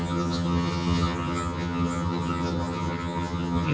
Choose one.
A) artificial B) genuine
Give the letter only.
A